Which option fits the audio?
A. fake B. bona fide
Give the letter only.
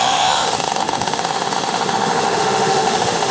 A